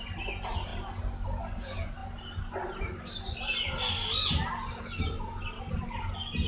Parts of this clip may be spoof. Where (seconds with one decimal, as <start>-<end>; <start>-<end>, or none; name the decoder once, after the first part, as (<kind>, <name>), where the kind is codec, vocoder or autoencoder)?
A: none